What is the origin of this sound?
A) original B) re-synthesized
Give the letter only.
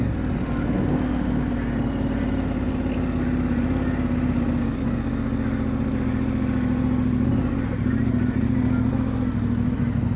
A